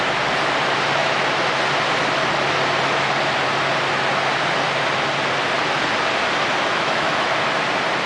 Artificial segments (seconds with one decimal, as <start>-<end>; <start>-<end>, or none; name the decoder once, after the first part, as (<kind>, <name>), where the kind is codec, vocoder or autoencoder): 6.7-7.3 (autoencoder, DAC-VAE)